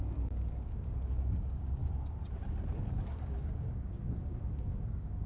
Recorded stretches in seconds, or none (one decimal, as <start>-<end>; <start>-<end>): 1.8-2.7

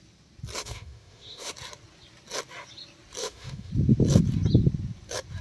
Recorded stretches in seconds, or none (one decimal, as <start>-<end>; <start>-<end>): 0.0-0.6; 1.5-3.2; 3.7-5.4

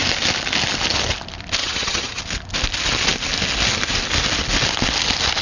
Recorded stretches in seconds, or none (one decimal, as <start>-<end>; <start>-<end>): 0.0-1.6; 2.2-5.4

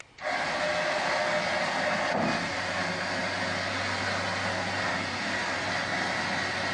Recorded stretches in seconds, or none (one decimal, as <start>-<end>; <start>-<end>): 0.0-6.7